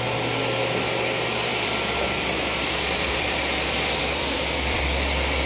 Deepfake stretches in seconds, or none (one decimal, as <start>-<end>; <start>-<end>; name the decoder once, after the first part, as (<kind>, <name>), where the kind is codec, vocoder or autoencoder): 1.5-4.8 (vocoder, BigVGAN v2)